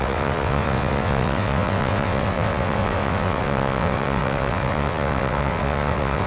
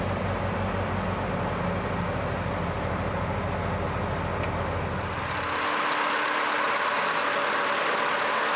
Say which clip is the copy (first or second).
first